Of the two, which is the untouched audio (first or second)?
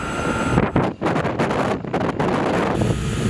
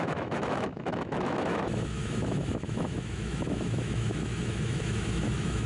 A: first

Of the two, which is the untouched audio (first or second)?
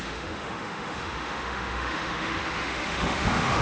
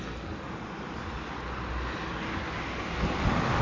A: second